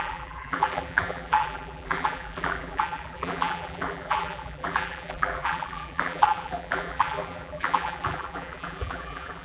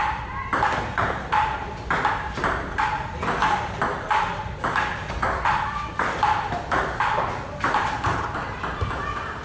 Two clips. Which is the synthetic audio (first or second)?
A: first